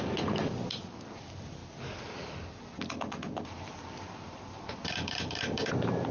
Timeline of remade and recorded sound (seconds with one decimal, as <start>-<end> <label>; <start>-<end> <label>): 0.0-6.1 recorded